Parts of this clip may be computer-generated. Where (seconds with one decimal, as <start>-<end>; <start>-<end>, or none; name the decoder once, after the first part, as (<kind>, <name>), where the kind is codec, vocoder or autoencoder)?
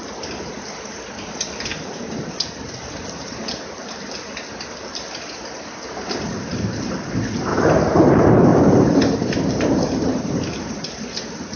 1.7-4.0 (vocoder, BigVGAN v2); 7.5-8.1; 8.5-10.7